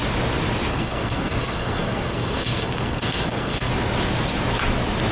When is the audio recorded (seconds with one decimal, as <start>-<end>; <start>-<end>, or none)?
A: 0.0-0.7; 3.7-5.1